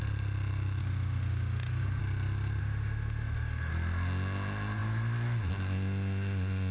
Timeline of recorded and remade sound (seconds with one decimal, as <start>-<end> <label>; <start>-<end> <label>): 0.0-0.8 recorded; 0.8-2.0 remade; 2.0-2.6 recorded; 2.6-3.7 remade; 3.7-6.7 recorded

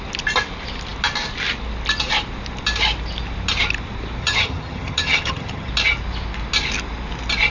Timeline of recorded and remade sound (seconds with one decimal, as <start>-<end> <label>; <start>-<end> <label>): 0.0-4.2 recorded; 4.2-5.7 remade; 5.7-7.5 recorded

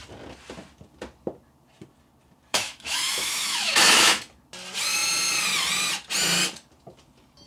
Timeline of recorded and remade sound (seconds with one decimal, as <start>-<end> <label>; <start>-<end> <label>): 0.0-2.5 recorded; 2.5-4.2 remade; 4.2-7.5 recorded

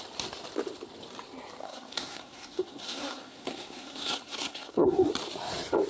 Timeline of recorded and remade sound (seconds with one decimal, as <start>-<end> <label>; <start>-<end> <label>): 0.0-1.6 recorded; 1.6-5.1 remade; 5.1-5.9 recorded